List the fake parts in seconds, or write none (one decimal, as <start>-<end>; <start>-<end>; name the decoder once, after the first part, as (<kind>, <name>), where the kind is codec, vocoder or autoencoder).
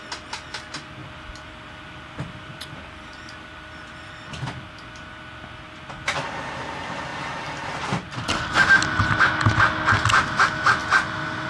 1.0-4.1 (vocoder, BigVGAN v2)